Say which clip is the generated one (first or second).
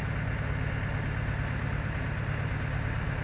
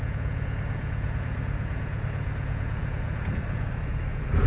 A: second